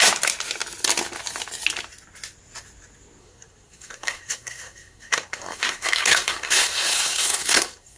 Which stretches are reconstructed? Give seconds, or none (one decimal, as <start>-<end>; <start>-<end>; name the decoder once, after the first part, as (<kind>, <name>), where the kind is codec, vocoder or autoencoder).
3.2-8.0 (codec, SNAC)